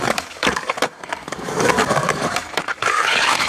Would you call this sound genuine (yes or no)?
no